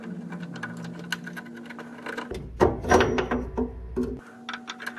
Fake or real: real